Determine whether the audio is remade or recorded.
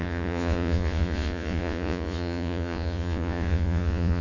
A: remade